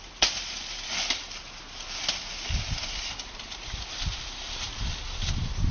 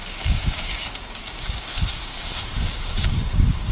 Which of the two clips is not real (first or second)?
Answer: second